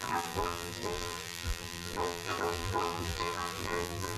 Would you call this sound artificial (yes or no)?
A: yes